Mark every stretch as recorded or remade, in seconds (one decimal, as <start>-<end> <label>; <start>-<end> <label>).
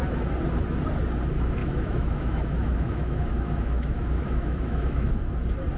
0.0-1.6 recorded; 1.6-5.1 remade; 5.1-5.8 recorded